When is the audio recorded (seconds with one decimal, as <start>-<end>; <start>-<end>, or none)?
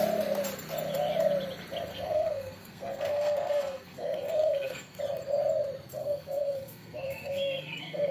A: 0.0-1.9; 5.0-6.0